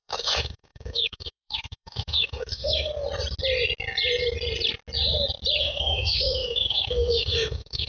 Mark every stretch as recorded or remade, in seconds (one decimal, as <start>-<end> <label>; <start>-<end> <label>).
0.0-2.9 remade; 2.9-5.6 recorded; 5.6-7.9 remade